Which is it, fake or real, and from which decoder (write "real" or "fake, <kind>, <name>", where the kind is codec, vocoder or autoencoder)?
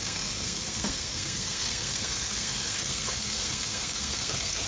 fake, codec, SNAC